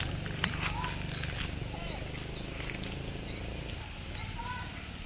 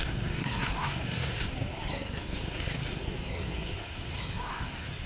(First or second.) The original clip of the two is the first